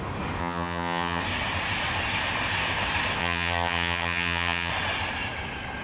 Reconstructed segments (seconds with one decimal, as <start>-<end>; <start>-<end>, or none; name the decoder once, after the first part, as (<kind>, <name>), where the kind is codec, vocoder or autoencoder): 0.4-1.2 (vocoder, HiFi-GAN); 3.2-4.7